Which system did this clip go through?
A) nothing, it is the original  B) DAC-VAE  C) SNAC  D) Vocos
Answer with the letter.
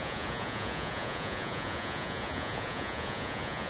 D